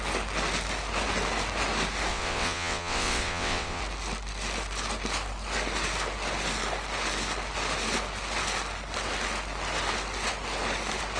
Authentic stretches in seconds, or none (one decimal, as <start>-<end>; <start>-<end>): 0.0-2.1; 3.8-11.2